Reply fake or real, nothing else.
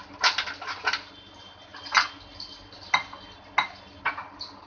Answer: real